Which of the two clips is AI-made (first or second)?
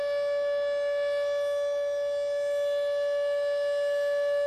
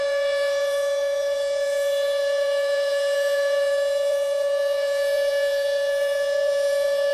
second